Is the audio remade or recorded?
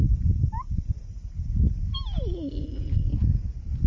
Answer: recorded